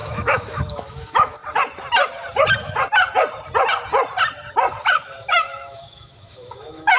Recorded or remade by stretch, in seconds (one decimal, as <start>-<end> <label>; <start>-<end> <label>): 0.0-1.4 remade; 1.4-4.8 recorded; 4.8-7.0 remade

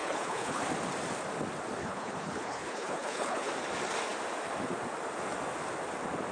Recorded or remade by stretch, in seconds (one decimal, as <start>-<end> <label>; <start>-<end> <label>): 0.0-0.6 remade; 0.6-1.8 recorded; 1.8-3.5 remade; 3.5-6.3 recorded

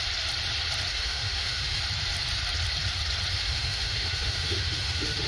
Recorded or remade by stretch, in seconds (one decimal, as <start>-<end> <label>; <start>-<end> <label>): 0.0-0.9 recorded; 0.9-1.8 remade; 1.8-3.3 recorded; 3.3-5.3 remade

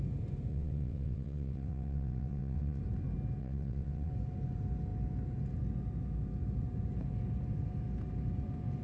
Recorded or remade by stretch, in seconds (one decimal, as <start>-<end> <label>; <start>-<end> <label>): 0.0-0.5 recorded; 0.5-2.8 remade; 2.8-3.4 recorded; 3.4-4.1 remade; 4.1-8.8 recorded

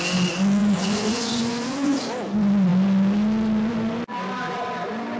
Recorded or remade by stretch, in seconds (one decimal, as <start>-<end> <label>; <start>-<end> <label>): 0.0-0.6 recorded; 0.6-2.0 remade; 2.0-5.2 recorded

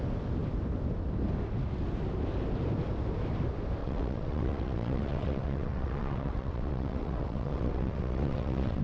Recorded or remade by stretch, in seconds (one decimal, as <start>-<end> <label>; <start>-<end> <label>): 0.0-3.8 recorded; 3.8-8.8 remade

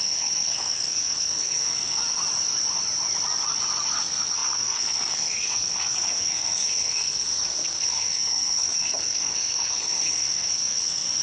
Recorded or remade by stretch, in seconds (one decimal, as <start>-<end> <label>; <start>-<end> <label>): 0.0-2.0 remade; 2.0-4.0 recorded; 4.0-11.2 remade

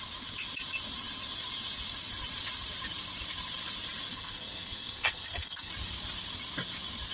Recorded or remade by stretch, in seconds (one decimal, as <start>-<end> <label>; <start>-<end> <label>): 0.0-4.1 recorded; 4.1-5.7 remade; 5.7-7.1 recorded